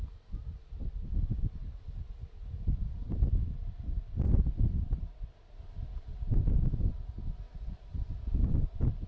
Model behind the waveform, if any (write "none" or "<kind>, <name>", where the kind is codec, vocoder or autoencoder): none